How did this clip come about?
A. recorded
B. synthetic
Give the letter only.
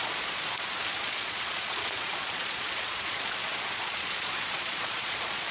B